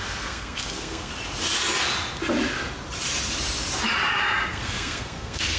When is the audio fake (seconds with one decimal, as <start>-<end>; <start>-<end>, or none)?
0.0-1.1; 4.5-5.6